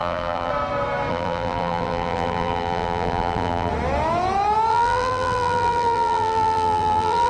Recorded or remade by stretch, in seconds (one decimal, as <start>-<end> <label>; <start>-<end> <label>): 0.0-0.5 remade; 0.5-1.1 recorded; 1.1-3.7 remade; 3.7-4.7 recorded; 4.7-7.3 remade